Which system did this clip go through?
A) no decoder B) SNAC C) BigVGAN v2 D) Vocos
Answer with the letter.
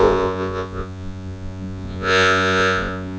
D